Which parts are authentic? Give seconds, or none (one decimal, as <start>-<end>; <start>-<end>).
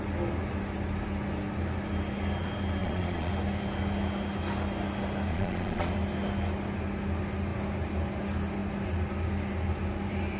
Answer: 0.0-2.8; 3.3-5.3; 5.9-10.4